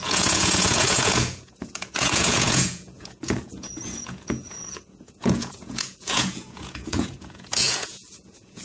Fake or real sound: fake